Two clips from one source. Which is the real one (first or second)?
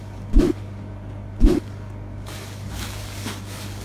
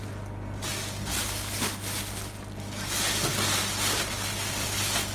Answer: second